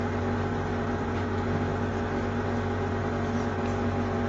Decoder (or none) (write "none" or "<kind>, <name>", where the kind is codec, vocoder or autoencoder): none